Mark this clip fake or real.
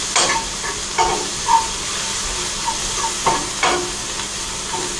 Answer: real